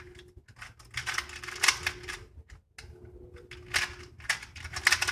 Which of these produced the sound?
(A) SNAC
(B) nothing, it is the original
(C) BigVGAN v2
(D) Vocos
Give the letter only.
B